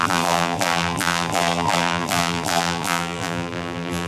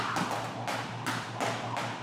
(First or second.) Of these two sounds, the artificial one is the first